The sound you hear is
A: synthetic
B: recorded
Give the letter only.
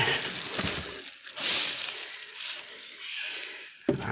B